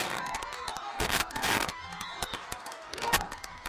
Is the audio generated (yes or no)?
yes